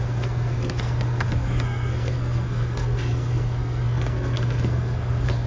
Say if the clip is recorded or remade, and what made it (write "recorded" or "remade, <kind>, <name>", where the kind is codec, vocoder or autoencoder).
remade, codec, SNAC